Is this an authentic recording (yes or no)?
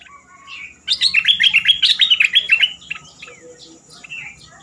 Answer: yes